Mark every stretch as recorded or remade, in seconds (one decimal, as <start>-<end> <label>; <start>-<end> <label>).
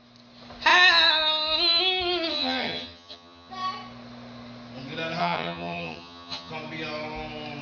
0.0-2.3 recorded; 2.3-3.5 remade; 3.5-5.2 recorded; 5.2-6.5 remade; 6.5-7.6 recorded